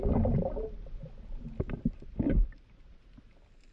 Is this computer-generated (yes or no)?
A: no